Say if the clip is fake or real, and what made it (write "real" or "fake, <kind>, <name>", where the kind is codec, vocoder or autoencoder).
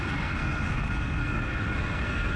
fake, codec, SNAC